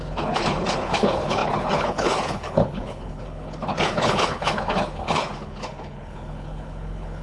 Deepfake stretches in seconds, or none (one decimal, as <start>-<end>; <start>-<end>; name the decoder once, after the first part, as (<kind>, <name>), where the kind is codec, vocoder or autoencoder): 0.0-7.2 (codec, HILCodec)